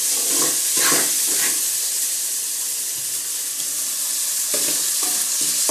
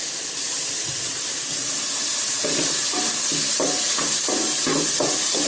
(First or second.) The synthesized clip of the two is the second